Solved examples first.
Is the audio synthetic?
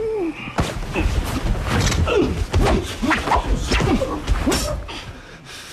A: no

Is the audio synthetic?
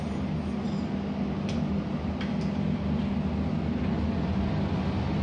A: no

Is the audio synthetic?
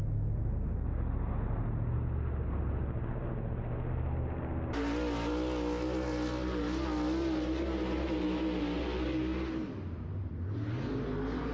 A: no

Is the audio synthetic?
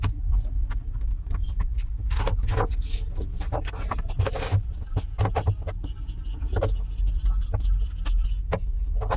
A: no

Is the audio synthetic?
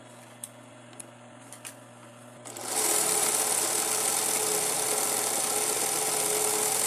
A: no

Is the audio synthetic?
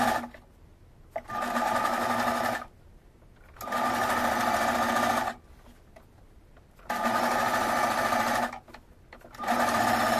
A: no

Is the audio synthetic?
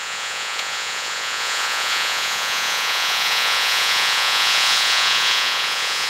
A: yes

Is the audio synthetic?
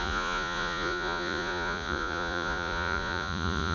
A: yes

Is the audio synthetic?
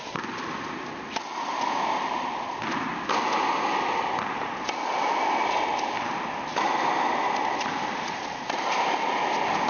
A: no